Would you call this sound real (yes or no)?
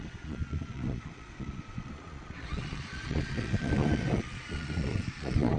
no